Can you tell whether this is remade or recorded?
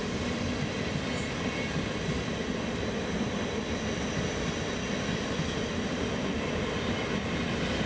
recorded